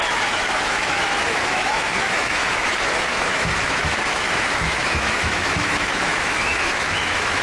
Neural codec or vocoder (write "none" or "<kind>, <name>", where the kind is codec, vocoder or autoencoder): autoencoder, DAC-VAE